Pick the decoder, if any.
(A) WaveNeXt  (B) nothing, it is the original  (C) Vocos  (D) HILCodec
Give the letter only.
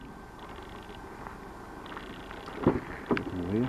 B